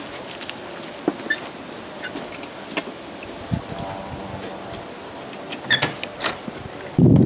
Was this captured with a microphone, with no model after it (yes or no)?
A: yes